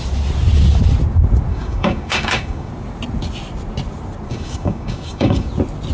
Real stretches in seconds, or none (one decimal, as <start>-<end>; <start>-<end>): 0.0-1.5; 2.7-4.3; 5.5-5.9